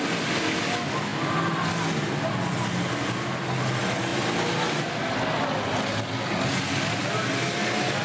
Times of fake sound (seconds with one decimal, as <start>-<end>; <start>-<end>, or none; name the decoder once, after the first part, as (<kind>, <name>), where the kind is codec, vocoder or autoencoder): none